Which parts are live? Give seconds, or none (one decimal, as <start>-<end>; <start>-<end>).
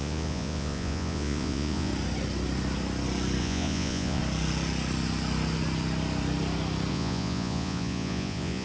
1.9-3.4; 4.2-6.9